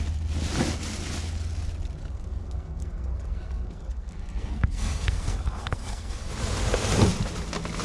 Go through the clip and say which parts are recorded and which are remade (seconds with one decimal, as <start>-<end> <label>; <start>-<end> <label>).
0.0-2.0 recorded; 2.0-6.3 remade; 6.3-7.8 recorded